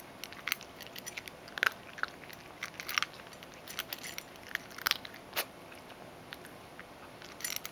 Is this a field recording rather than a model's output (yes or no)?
yes